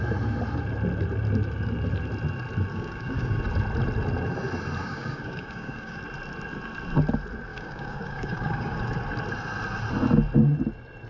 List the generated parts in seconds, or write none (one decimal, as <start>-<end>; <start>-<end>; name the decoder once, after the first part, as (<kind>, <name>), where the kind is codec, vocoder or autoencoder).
2.7-3.4 (codec, DAC); 4.8-6.0; 7.5-8.8